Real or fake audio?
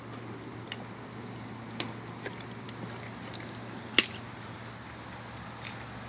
real